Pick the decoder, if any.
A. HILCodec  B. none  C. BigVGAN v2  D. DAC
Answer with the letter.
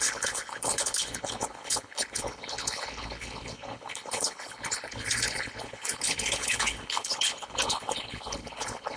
A